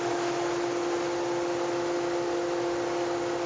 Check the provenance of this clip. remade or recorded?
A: recorded